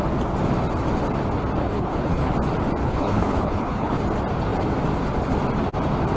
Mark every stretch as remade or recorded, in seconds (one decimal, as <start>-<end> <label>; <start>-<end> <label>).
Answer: 0.0-1.6 recorded; 1.6-2.3 remade; 2.3-2.8 recorded; 2.8-4.0 remade; 4.0-6.2 recorded